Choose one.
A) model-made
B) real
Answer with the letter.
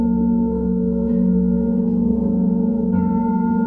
A